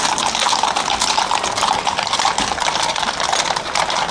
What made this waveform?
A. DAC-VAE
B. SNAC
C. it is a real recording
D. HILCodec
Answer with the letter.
C